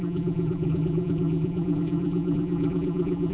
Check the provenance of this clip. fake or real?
fake